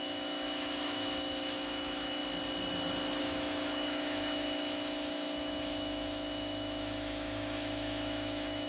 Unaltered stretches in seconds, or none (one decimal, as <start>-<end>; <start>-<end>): 2.2-3.2